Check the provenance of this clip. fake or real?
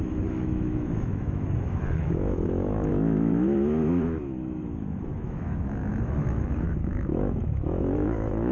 fake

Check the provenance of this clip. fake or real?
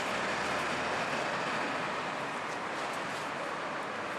real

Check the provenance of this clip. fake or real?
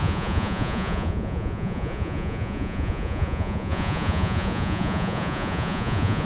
fake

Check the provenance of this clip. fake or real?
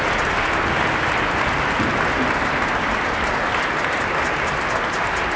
real